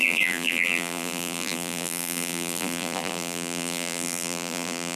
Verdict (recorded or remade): remade